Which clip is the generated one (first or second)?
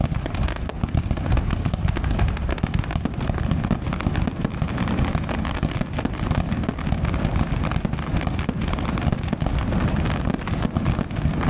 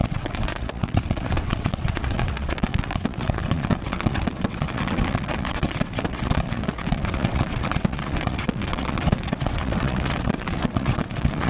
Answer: second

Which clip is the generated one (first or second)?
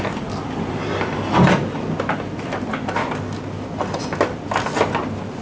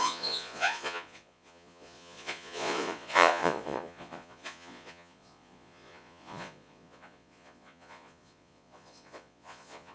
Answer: second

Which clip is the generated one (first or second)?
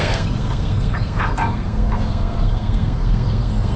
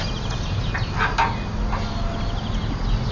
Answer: first